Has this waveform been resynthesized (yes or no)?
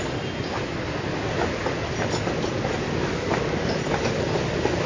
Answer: no